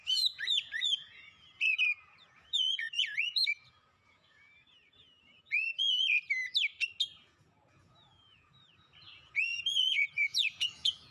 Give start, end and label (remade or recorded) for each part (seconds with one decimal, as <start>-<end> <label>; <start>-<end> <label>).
0.0-6.2 remade; 6.2-7.2 recorded; 7.2-11.1 remade